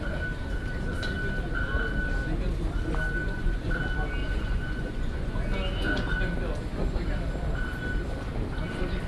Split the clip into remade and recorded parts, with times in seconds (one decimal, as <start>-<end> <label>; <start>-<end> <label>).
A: 0.0-3.2 recorded; 3.2-3.7 remade; 3.7-4.2 recorded; 4.2-5.4 remade; 5.4-9.1 recorded